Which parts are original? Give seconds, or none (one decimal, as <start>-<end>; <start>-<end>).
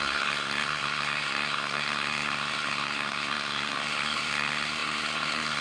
none